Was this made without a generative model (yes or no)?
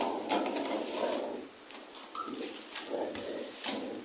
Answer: yes